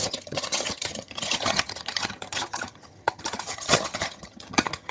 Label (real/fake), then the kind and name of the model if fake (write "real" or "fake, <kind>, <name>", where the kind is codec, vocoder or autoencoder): fake, vocoder, HiFi-GAN